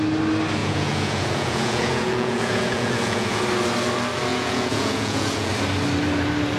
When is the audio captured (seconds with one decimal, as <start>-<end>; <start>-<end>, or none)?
0.0-0.6; 3.4-4.3; 5.5-6.6